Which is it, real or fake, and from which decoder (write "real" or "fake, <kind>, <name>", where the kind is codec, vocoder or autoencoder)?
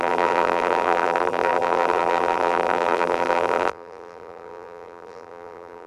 fake, vocoder, BigVGAN v2